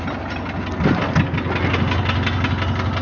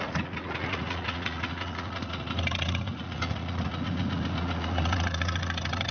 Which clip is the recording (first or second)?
first